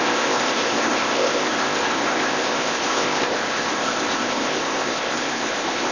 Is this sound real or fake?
fake